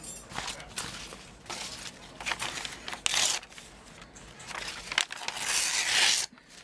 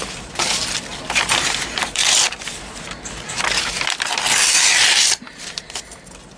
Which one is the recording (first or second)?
first